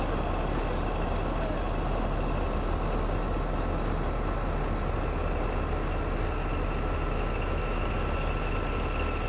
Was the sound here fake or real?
real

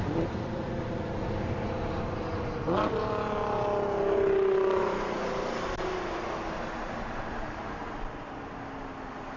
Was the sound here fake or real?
real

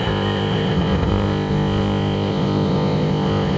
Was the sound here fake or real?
fake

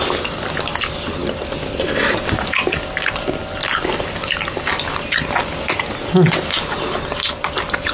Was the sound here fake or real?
real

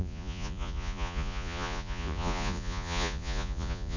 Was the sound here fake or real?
fake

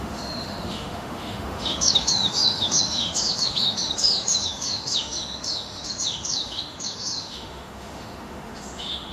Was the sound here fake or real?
fake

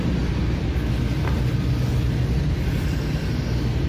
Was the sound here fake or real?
real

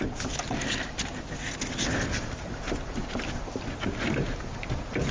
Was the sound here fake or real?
real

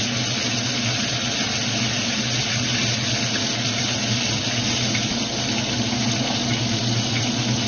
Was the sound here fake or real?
real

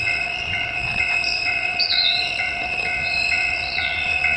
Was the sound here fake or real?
fake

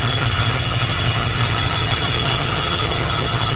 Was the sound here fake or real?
fake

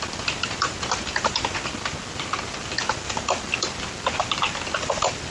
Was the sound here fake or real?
fake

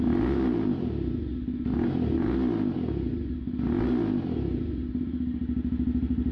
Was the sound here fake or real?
real